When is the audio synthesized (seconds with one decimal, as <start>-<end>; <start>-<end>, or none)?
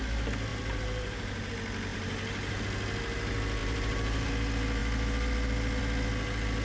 0.5-1.5; 1.9-2.6; 3.6-4.3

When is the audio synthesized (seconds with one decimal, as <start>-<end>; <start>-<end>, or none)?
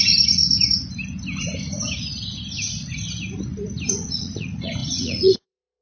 0.0-0.4; 3.9-5.8